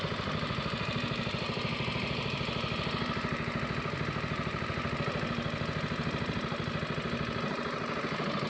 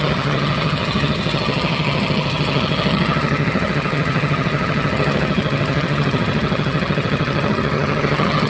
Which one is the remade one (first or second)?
second